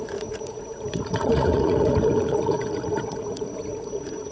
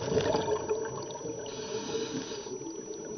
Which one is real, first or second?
second